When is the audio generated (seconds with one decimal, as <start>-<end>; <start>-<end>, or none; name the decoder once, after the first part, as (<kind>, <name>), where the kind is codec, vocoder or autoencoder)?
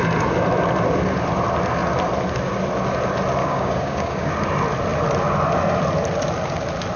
3.4-4.3 (codec, DAC)